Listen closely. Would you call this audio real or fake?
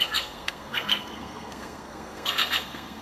fake